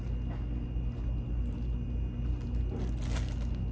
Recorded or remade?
recorded